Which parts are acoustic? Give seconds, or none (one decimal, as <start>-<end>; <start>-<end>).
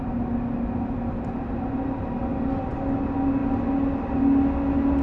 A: 0.0-5.0